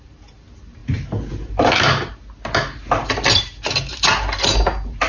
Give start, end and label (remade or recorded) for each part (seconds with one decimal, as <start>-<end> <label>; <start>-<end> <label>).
0.0-5.1 recorded